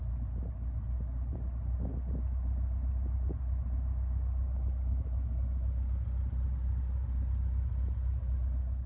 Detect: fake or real real